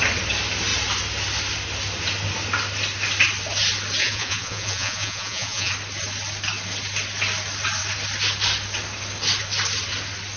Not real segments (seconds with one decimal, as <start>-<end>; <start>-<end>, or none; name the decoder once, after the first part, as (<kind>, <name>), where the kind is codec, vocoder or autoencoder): 4.0-5.7 (vocoder, Vocos)